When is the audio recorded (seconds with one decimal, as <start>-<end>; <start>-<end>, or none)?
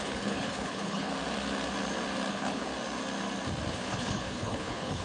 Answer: 1.1-2.3; 2.7-3.7